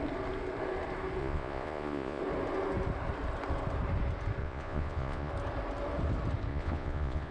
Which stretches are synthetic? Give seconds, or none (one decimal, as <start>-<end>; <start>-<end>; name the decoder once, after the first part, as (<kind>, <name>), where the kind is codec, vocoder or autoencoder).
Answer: 1.2-2.2 (vocoder, Vocos); 4.4-5.3; 6.5-7.3